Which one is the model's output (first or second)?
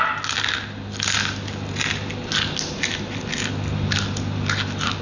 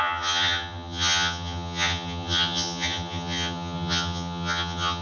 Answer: second